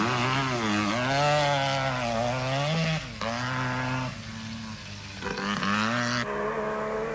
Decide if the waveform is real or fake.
real